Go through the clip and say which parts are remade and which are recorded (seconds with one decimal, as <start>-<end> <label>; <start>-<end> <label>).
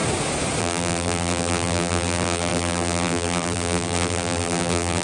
0.0-0.6 recorded; 0.6-5.0 remade